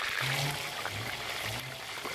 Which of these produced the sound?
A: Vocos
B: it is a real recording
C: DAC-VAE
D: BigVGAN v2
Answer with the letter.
B